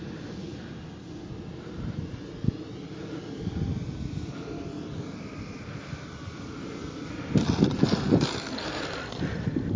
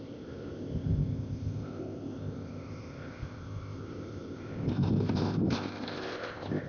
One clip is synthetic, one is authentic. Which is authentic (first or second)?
first